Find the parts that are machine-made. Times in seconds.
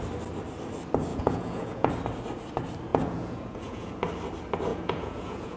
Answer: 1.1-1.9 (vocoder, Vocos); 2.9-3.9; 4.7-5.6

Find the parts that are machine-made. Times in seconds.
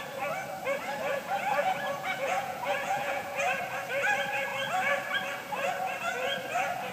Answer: 1.0-3.6 (vocoder, Vocos)